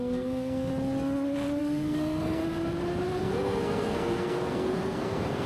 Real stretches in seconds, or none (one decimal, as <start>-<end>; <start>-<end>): 0.7-1.6; 2.4-3.2

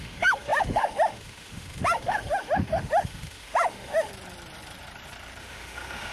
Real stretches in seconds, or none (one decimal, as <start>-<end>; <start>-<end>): 4.1-5.4

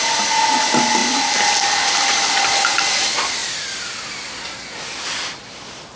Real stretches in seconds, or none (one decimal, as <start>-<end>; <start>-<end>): 0.0-6.0

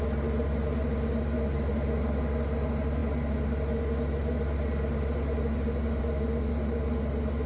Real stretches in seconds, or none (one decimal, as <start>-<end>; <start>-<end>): 0.0-7.5

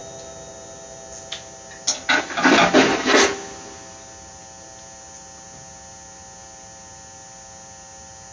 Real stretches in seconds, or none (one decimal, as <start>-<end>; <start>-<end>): 0.0-8.3

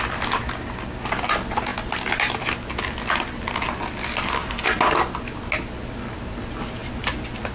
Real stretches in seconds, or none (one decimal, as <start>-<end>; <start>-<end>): 0.0-7.5

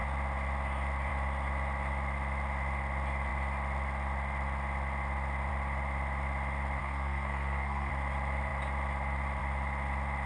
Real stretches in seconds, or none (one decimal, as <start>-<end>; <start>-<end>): 0.0-6.8; 7.9-10.3

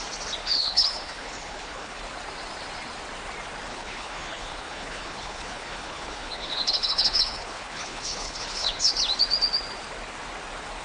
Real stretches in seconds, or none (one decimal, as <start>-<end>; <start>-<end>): 0.0-0.4; 2.0-3.7; 8.9-10.8